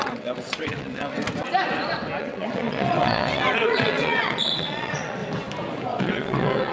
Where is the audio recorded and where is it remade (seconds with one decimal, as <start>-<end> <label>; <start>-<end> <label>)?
0.0-1.2 remade; 1.2-2.2 recorded; 2.2-5.2 remade; 5.2-6.0 recorded; 6.0-6.7 remade

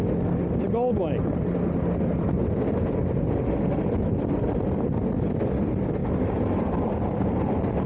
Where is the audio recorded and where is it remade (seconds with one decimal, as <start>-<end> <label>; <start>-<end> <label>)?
0.0-6.0 recorded; 6.0-6.9 remade; 6.9-7.9 recorded

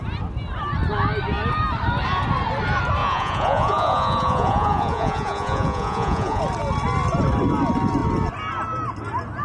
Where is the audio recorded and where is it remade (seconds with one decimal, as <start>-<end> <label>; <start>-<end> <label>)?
0.0-3.0 recorded; 3.0-6.4 remade; 6.4-9.4 recorded

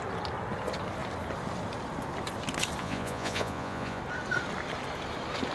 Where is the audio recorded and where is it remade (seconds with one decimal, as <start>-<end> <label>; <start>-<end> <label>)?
0.0-2.8 recorded; 2.8-4.0 remade; 4.0-5.5 recorded